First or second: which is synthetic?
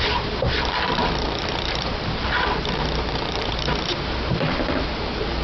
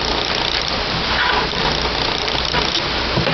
first